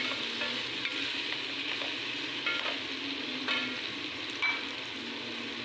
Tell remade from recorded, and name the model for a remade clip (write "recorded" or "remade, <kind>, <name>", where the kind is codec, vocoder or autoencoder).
recorded